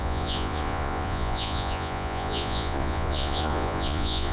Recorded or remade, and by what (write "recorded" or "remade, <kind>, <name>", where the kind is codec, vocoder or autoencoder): remade, vocoder, Vocos